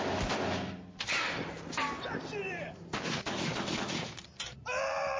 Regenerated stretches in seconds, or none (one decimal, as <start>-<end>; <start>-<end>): 2.4-5.2